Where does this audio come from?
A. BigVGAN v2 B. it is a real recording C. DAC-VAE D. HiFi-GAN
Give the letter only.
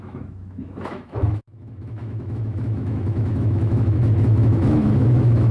C